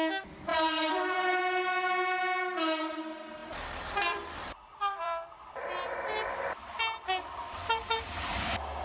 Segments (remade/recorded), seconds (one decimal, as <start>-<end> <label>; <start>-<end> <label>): 0.0-0.5 recorded; 0.5-1.4 remade; 1.4-3.4 recorded; 3.4-6.5 remade; 6.5-8.8 recorded